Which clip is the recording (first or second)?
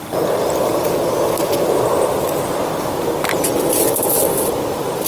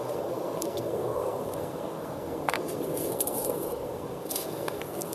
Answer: first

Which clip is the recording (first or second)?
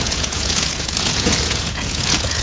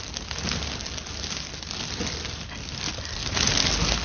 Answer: second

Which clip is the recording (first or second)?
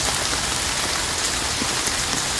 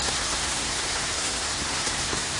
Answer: first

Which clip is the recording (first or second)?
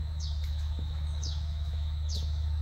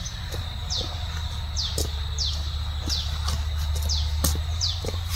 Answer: second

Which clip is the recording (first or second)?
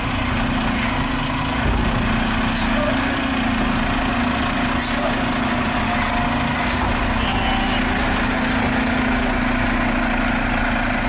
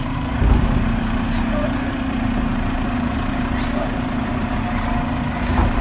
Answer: first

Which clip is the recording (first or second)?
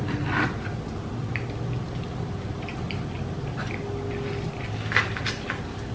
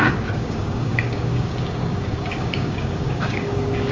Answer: first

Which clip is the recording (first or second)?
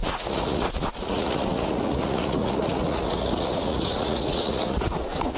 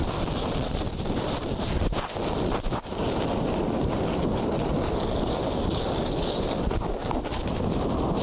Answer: second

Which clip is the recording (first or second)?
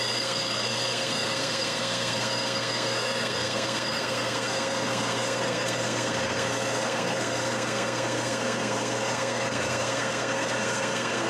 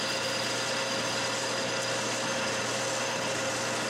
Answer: second